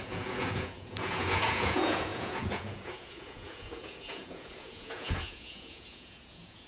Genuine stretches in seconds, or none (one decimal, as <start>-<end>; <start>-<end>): none